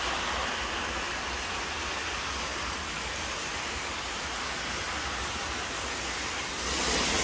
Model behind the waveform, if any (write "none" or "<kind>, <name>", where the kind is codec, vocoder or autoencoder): none